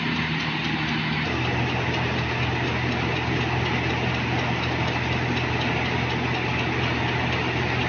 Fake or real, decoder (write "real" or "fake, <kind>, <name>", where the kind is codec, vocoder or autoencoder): real